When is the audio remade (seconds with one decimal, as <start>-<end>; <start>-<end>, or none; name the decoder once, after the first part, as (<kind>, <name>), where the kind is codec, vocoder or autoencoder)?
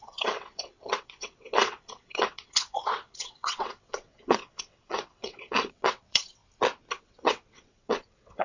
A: 0.0-6.4 (vocoder, WaveNeXt); 7.0-8.4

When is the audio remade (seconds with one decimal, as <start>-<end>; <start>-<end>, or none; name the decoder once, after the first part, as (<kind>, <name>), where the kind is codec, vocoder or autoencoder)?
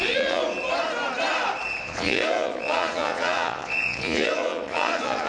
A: 0.0-0.4 (vocoder, Vocos); 1.8-5.3